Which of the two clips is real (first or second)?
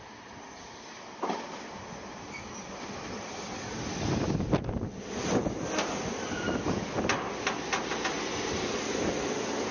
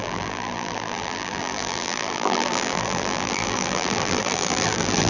first